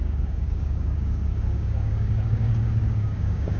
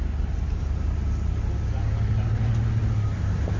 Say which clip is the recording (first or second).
second